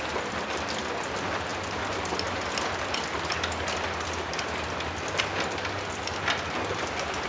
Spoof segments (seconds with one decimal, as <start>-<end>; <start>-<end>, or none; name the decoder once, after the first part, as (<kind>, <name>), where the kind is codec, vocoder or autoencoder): none